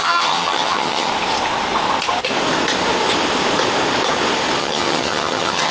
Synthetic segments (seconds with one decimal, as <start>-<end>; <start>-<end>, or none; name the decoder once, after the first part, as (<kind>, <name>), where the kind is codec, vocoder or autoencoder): 0.0-1.1 (vocoder, HiFi-GAN); 4.6-5.7